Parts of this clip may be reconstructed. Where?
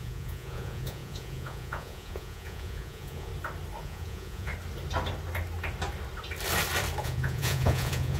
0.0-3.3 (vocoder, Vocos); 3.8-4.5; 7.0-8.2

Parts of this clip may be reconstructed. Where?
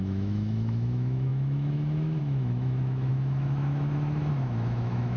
0.0-5.2 (autoencoder, DAC-VAE)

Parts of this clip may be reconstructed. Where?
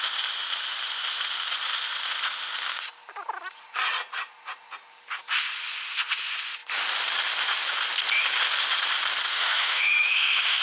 9.3-10.6 (autoencoder, DAC-VAE)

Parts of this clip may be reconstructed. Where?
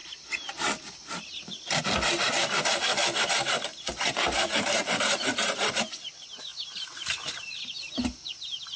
2.9-5.8 (vocoder, BigVGAN v2); 6.5-7.6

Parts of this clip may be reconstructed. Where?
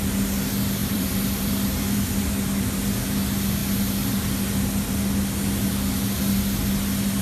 0.8-2.3 (vocoder, BigVGAN v2)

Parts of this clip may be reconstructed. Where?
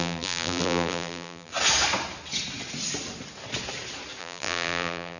0.0-1.5 (vocoder, BigVGAN v2); 4.2-5.2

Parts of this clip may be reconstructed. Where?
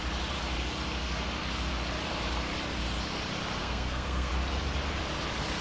3.6-4.3 (codec, SNAC)